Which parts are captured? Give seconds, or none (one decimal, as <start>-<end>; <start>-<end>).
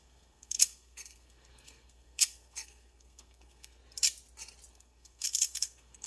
3.8-4.7